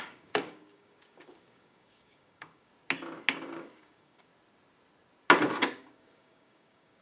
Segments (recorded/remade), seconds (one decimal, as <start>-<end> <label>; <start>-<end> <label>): 0.0-2.7 remade; 2.7-3.3 recorded; 3.3-4.3 remade; 4.3-5.4 recorded; 5.4-7.0 remade

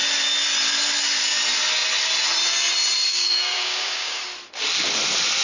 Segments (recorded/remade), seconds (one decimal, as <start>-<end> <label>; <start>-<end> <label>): 0.0-3.1 recorded; 3.1-4.2 remade; 4.2-5.4 recorded

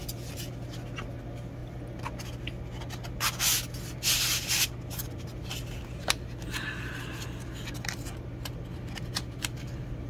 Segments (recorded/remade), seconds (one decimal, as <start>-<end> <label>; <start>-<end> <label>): 0.0-10.1 recorded

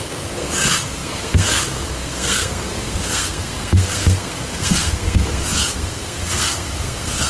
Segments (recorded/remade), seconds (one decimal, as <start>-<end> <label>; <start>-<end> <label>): 0.0-7.3 remade

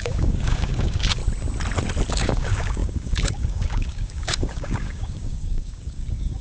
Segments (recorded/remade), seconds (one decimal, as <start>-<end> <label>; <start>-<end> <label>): 0.0-1.2 remade; 1.2-2.1 recorded; 2.1-6.4 remade

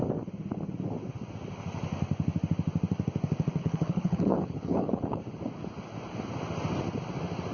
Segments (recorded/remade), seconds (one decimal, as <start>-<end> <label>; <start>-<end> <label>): 0.0-3.6 recorded; 3.6-5.2 remade; 5.2-7.5 recorded

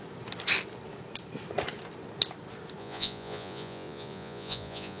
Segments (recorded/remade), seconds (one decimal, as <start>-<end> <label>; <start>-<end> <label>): 0.0-2.8 recorded; 2.8-5.0 remade

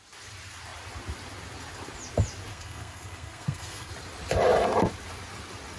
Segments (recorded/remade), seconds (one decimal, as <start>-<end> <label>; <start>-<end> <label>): 0.0-2.5 recorded; 2.5-3.9 remade; 3.9-5.8 recorded